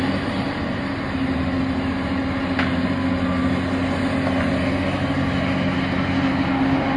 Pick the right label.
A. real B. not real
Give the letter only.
A